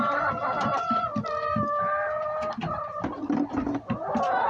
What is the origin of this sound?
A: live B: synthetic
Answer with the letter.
A